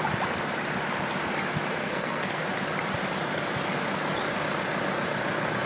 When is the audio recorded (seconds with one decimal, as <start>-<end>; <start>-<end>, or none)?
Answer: 0.0-1.8; 2.4-5.7